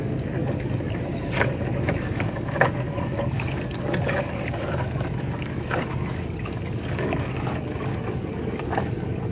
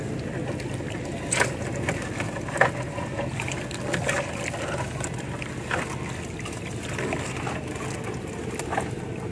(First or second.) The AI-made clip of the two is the first